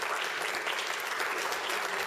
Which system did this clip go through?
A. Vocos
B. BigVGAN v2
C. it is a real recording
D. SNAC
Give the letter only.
C